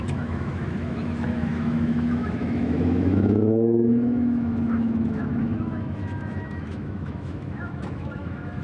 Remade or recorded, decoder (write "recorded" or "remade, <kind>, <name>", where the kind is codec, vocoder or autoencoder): remade, autoencoder, DAC-VAE